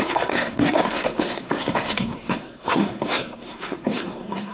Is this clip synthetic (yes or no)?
yes